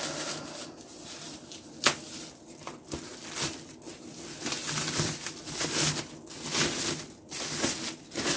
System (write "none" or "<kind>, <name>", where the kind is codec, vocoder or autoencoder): none